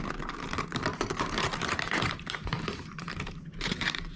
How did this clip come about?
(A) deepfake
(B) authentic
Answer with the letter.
A